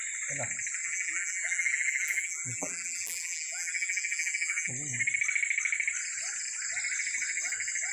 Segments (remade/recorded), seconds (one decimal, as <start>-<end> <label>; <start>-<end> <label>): 0.0-0.8 recorded; 0.8-4.7 remade; 4.7-7.9 recorded